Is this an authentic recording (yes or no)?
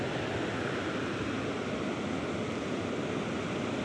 yes